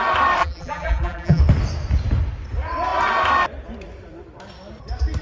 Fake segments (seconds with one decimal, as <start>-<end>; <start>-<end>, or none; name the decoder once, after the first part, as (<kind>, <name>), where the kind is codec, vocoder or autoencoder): 0.4-1.4 (vocoder, BigVGAN v2)